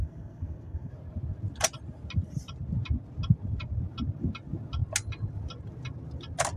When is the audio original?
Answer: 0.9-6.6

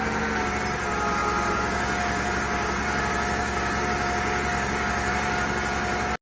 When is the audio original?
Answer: 0.0-6.2

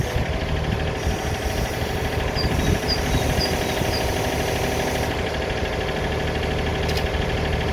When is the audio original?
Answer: 0.0-7.7

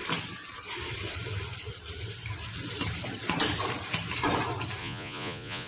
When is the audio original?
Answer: 0.0-4.8

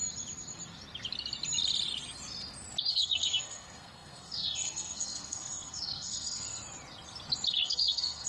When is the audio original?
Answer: 0.0-2.9; 6.6-7.5

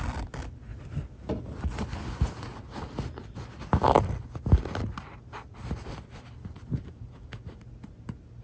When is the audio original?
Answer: 0.0-8.4